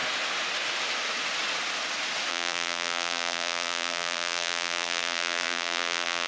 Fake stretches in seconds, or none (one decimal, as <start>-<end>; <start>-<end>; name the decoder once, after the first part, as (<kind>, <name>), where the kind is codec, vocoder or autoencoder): 2.3-6.3 (vocoder, BigVGAN v2)